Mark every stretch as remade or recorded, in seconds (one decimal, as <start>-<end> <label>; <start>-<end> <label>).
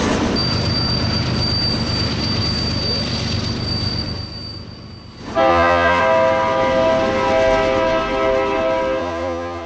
0.0-5.5 recorded; 5.5-6.0 remade; 6.0-9.0 recorded; 9.0-9.7 remade